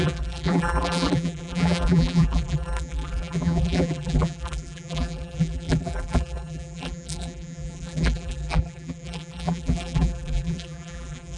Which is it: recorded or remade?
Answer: remade